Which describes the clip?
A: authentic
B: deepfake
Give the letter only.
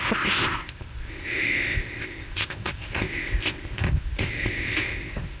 B